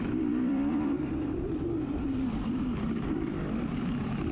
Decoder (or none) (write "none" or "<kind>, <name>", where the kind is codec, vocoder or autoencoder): vocoder, BigVGAN v2